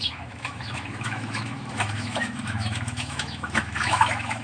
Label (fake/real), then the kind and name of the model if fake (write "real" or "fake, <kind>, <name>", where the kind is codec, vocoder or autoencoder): fake, autoencoder, DAC-VAE